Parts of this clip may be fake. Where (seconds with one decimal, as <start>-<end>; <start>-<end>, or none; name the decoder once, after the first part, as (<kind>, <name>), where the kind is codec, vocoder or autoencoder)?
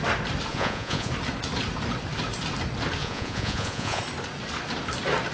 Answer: 0.5-1.1 (vocoder, Vocos); 3.0-4.0